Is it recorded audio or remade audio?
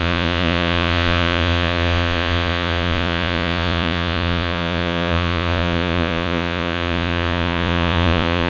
remade